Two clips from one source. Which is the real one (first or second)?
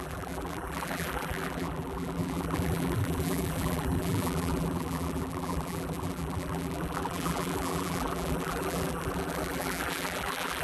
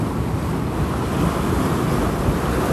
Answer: second